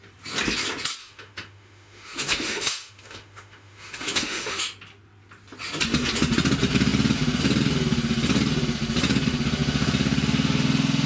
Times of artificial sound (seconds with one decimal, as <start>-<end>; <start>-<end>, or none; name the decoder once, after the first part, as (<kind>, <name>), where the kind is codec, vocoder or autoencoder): 1.0-4.6 (autoencoder, DAC-VAE)